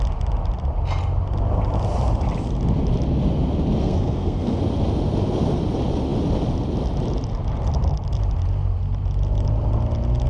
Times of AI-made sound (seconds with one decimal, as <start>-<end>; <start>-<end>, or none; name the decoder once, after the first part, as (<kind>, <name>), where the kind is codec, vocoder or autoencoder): 3.8-4.6 (codec, SNAC)